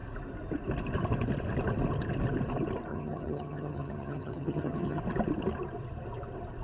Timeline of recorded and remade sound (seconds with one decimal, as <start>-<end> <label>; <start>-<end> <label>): 0.0-2.9 recorded; 2.9-5.0 remade; 5.0-6.6 recorded